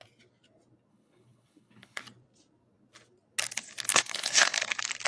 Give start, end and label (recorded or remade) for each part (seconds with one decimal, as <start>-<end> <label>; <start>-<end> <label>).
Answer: 0.0-0.9 recorded; 0.9-2.0 remade; 2.0-3.9 recorded; 3.9-4.6 remade; 4.6-5.1 recorded